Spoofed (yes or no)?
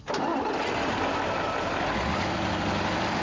no